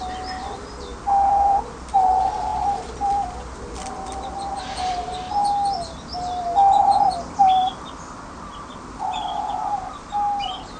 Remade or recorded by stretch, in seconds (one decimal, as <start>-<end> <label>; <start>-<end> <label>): 0.0-2.5 recorded; 2.5-4.9 remade; 4.9-10.8 recorded